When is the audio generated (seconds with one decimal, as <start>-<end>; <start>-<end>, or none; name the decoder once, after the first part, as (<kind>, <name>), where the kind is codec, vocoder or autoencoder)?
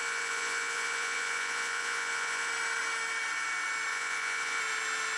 0.0-2.5 (vocoder, Vocos); 3.9-4.6